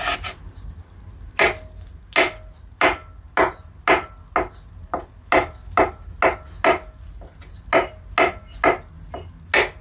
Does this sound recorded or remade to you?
recorded